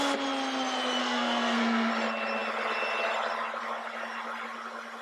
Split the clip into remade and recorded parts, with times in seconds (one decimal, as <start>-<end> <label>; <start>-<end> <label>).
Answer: 0.0-1.0 recorded; 1.0-1.9 remade; 1.9-5.0 recorded